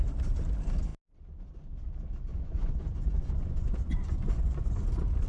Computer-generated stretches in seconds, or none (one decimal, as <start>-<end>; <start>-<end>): 2.3-4.6